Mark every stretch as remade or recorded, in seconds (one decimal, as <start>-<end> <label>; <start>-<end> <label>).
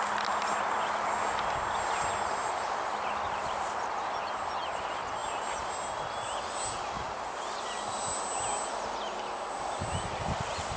0.0-10.8 recorded